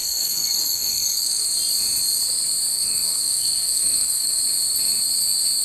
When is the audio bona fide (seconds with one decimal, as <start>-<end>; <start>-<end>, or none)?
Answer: 1.5-2.7; 4.4-5.6

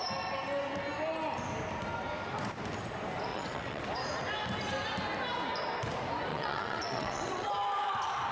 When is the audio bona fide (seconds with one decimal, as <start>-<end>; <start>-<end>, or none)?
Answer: 0.0-3.3; 3.8-6.3; 7.5-8.3

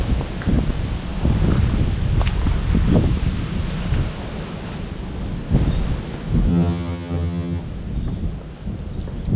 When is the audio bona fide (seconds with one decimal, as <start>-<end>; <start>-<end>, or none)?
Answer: 0.0-6.5; 7.6-9.4

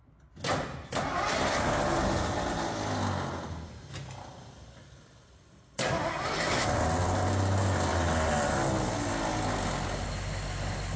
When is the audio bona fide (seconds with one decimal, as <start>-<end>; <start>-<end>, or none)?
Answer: 0.0-11.0

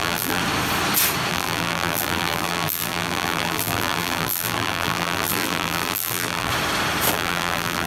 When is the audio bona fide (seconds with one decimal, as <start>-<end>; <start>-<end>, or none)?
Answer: 0.4-1.3; 6.5-7.1

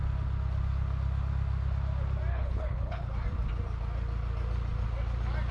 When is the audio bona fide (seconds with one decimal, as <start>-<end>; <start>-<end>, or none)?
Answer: 0.0-2.3; 3.1-5.5